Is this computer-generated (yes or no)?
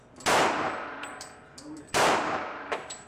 yes